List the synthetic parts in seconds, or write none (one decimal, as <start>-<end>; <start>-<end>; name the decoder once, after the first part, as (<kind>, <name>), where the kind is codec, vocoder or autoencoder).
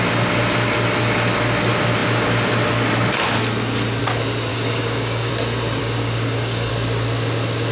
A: 4.5-5.3 (codec, DAC); 5.8-6.7